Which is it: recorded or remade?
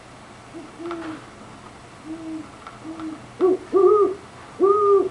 recorded